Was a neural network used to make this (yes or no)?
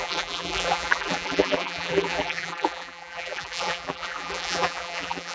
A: yes